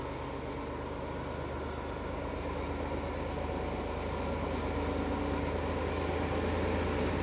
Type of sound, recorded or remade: recorded